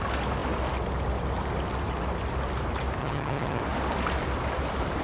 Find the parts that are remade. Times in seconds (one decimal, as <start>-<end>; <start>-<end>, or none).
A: 3.0-3.6